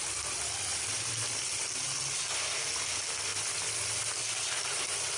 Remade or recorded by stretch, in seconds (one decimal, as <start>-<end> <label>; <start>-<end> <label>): 0.0-3.3 recorded; 3.3-5.2 remade

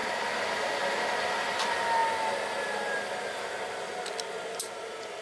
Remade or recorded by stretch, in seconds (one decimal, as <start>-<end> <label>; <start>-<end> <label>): 0.0-5.2 recorded

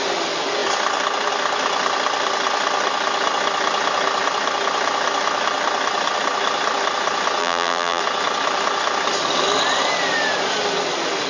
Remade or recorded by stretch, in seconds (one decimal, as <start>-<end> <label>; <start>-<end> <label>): 0.0-7.4 recorded; 7.4-8.0 remade; 8.0-11.3 recorded

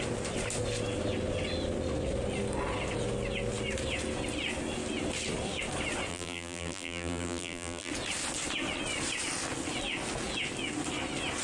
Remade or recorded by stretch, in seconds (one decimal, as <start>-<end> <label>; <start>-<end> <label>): 0.0-6.1 recorded; 6.1-7.9 remade; 7.9-11.4 recorded

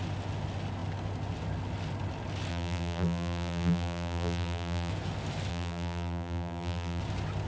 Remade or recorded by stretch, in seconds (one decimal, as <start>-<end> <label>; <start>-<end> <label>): 0.0-2.5 recorded; 2.5-4.9 remade; 4.9-5.5 recorded; 5.5-7.0 remade; 7.0-7.5 recorded

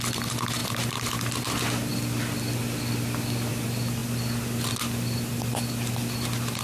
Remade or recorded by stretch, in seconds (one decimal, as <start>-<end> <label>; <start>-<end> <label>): 0.0-0.6 recorded; 0.6-1.1 remade; 1.1-6.6 recorded

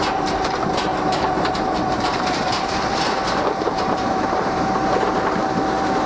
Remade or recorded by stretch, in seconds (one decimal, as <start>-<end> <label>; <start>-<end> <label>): 0.0-5.4 remade; 5.4-6.1 recorded

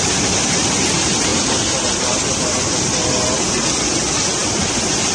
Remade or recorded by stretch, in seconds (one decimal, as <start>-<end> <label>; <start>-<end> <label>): 0.0-5.1 recorded